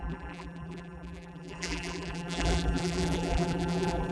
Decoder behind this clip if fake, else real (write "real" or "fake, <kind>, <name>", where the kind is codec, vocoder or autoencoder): fake, vocoder, BigVGAN v2